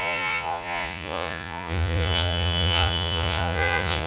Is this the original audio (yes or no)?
no